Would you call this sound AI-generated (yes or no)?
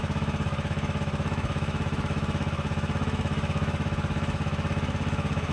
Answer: yes